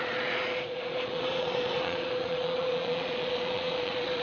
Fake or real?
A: fake